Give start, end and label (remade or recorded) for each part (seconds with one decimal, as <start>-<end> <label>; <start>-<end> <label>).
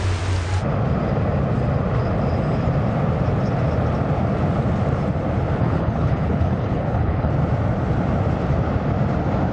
0.0-5.6 recorded; 5.6-7.3 remade; 7.3-9.5 recorded